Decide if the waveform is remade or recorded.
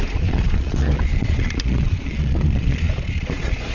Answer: remade